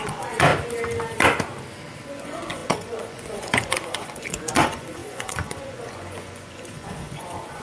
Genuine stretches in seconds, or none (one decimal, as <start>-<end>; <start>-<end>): 0.5-2.2